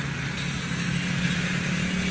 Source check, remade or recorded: recorded